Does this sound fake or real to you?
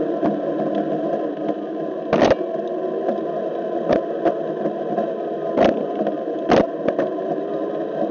real